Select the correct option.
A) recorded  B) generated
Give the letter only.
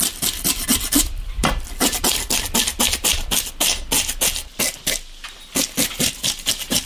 A